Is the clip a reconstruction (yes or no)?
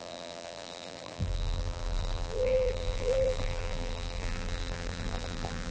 yes